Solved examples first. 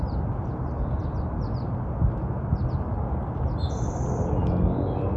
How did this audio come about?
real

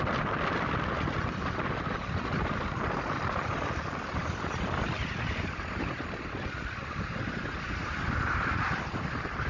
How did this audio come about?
real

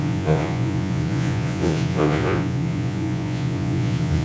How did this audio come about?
fake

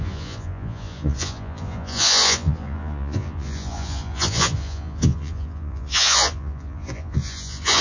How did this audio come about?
fake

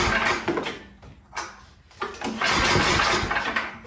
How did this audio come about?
real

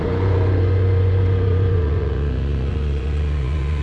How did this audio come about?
fake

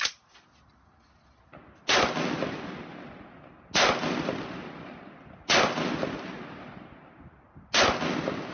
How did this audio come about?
real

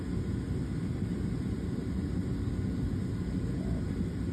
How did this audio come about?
real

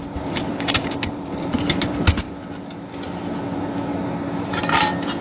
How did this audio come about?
real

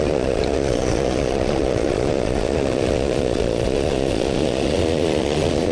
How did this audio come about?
fake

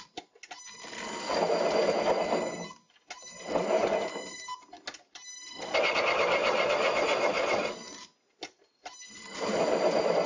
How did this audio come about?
real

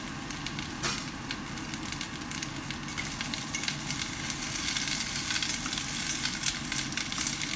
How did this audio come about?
real